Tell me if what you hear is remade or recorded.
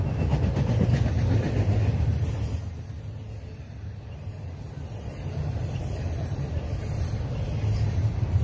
recorded